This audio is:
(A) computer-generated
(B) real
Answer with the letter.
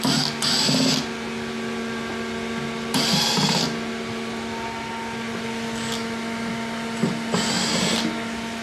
B